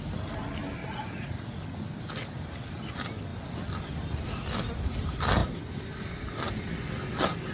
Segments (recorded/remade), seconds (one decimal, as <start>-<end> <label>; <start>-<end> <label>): 0.0-0.8 recorded; 0.8-1.6 remade; 1.6-7.5 recorded